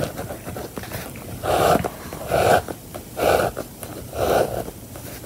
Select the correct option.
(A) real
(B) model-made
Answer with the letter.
A